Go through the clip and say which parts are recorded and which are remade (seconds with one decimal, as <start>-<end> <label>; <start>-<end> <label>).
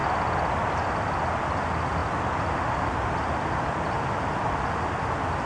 0.0-5.5 recorded